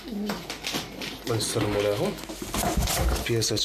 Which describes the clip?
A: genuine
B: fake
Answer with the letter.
A